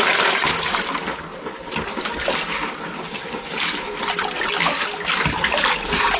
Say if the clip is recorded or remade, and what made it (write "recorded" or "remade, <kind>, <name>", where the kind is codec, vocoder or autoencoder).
recorded